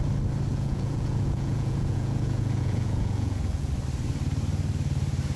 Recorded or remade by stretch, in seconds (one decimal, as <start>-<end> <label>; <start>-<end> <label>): 0.0-0.5 recorded; 0.5-3.7 remade; 3.7-5.4 recorded